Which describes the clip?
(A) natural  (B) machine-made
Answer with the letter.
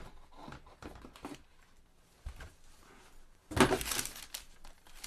A